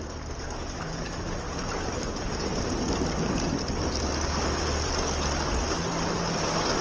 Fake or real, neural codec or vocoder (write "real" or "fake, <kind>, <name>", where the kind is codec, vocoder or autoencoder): real